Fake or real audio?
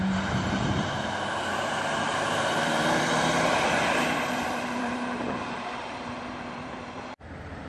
fake